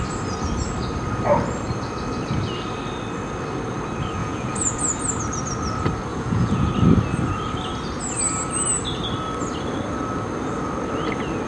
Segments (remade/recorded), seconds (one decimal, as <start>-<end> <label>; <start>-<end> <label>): 0.0-4.2 recorded; 4.2-4.9 remade; 4.9-6.1 recorded; 6.1-6.7 remade; 6.7-11.5 recorded